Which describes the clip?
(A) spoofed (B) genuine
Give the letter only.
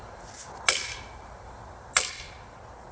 B